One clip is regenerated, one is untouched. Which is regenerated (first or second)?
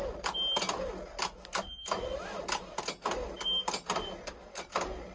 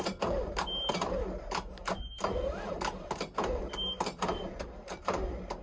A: second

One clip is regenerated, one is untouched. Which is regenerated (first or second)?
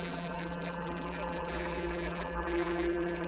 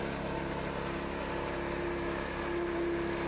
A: first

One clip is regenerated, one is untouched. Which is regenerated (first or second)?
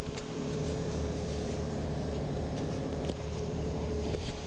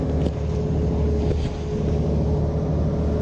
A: first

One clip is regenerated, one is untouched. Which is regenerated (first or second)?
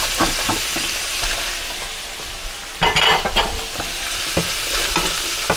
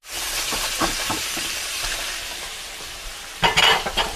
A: second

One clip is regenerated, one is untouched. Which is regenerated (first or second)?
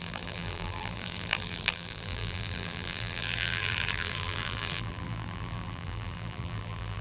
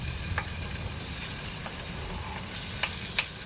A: first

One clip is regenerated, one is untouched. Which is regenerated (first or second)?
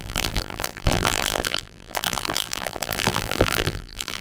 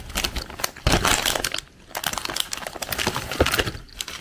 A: first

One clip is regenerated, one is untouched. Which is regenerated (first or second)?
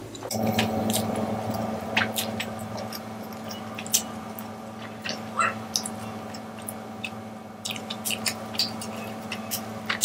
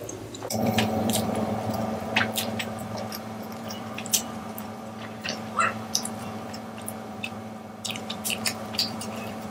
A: second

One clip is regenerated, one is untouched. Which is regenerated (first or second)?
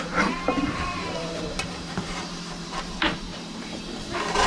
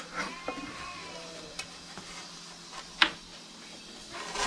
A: first